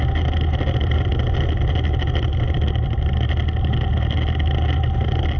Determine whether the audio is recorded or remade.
recorded